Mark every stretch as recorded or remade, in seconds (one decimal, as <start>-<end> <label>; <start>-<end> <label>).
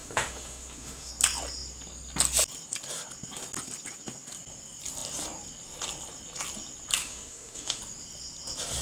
0.0-1.1 remade; 1.1-7.0 recorded; 7.0-7.8 remade; 7.8-8.8 recorded